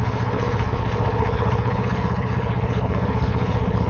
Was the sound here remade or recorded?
remade